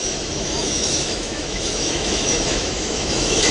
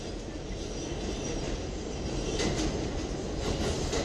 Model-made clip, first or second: first